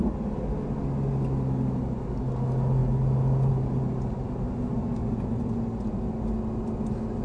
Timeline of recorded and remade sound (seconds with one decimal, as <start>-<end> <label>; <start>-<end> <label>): 0.0-5.0 recorded; 5.0-5.6 remade; 5.6-7.2 recorded